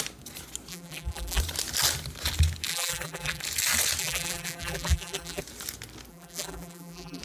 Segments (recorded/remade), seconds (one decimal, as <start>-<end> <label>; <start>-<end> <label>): 0.0-0.7 recorded; 0.7-1.4 remade; 1.4-2.7 recorded; 2.7-3.4 remade; 3.4-4.0 recorded; 4.0-5.4 remade; 5.4-6.1 recorded; 6.1-7.2 remade